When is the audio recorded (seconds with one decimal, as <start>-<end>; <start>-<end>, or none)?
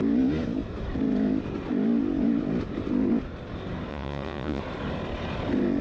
0.0-3.9; 4.6-5.8